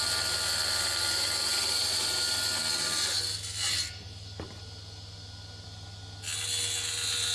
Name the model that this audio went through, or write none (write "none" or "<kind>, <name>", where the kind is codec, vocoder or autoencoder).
none